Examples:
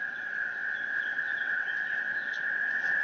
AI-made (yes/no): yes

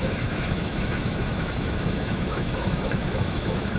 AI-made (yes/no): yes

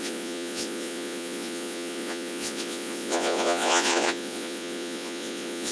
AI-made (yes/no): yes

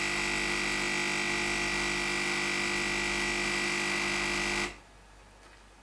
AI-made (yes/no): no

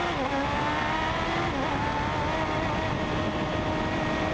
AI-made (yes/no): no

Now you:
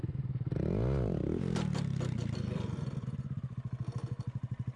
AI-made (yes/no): no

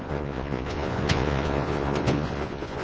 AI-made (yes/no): yes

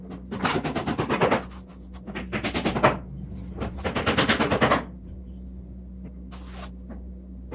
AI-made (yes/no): no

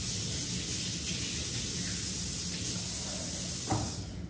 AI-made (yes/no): no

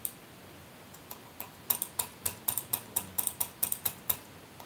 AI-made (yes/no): no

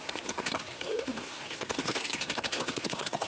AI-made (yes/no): yes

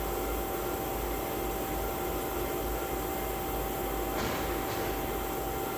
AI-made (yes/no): no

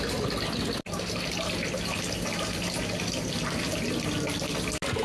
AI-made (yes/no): no